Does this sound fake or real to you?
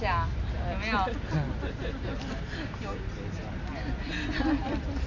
real